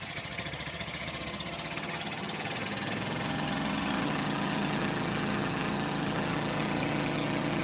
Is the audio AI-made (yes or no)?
yes